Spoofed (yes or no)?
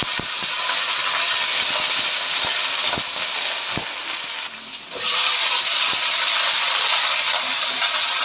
no